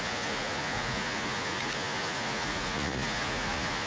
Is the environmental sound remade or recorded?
remade